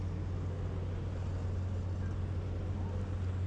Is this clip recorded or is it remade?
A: recorded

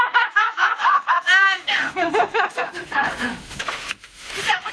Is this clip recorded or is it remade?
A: remade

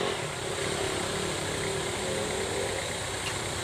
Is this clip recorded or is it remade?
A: recorded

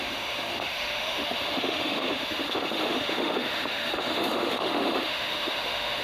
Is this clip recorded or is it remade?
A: remade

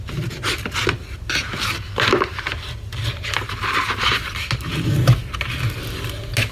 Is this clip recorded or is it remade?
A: recorded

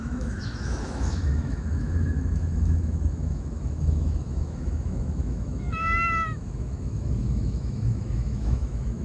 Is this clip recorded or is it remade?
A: remade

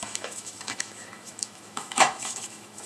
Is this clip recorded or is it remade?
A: remade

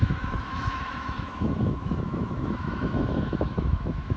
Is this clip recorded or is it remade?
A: remade